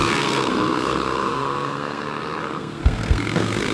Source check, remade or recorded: remade